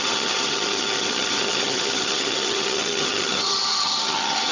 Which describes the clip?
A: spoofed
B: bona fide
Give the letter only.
A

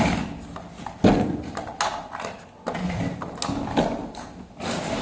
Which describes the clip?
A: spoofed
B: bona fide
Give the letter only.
B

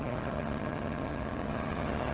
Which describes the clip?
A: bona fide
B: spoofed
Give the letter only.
B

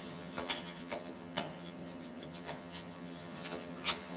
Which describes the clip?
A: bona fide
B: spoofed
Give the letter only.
B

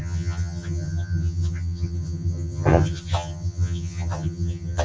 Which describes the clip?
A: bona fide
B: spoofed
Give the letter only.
B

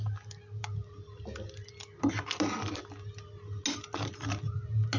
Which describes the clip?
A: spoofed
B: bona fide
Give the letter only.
B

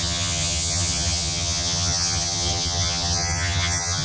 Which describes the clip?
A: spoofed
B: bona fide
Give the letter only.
A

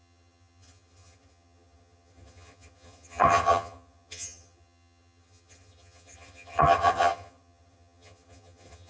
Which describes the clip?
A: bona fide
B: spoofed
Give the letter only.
B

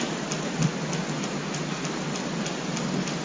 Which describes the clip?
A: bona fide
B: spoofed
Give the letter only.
A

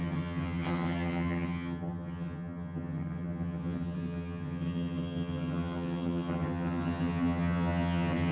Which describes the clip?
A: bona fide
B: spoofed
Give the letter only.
B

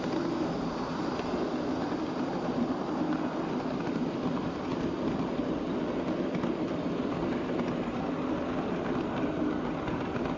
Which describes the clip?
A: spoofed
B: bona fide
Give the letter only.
B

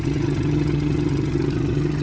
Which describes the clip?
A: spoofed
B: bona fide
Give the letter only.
A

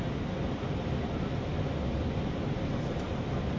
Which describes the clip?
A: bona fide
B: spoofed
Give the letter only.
A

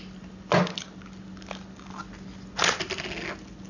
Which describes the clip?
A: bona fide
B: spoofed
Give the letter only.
A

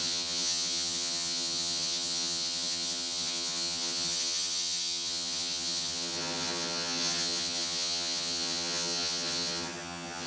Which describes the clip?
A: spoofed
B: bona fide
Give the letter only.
A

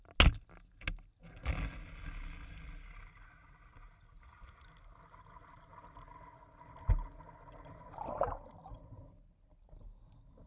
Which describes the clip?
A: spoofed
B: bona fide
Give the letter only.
B